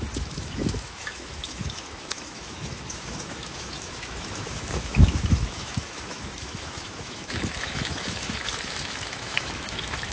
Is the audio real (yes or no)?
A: no